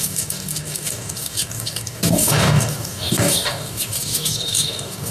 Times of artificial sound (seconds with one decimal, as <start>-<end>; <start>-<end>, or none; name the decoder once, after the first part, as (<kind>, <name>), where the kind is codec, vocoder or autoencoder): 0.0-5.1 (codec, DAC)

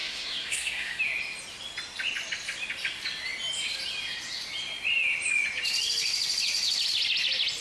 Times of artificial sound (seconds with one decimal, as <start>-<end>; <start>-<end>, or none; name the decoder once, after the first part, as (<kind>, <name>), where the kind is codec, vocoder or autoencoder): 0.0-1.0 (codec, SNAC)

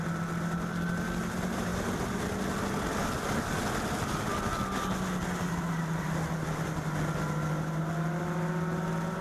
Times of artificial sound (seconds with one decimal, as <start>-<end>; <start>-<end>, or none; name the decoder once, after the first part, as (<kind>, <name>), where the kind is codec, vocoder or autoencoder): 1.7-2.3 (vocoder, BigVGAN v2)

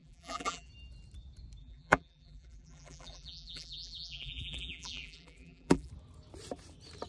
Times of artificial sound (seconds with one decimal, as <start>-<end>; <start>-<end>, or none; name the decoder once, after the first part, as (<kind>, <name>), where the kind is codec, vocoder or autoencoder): 0.0-0.7 (vocoder, BigVGAN v2); 1.6-5.9

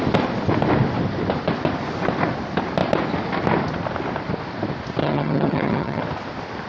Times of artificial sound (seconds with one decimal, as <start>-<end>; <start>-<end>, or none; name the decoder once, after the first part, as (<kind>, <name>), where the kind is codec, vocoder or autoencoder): 5.0-6.0 (vocoder, HiFi-GAN)

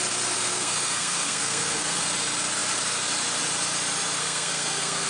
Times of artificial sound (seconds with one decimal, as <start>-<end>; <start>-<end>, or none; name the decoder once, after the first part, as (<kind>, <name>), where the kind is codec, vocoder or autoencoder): 0.5-2.0 (codec, SNAC); 4.2-5.1

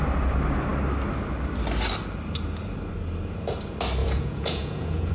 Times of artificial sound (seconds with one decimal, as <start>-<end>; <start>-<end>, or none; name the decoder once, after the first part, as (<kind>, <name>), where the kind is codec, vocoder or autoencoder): 4.0-5.1 (vocoder, Vocos)

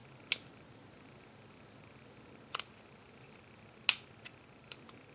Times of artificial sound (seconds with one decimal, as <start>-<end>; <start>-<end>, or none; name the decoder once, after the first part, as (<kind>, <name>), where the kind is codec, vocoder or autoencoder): none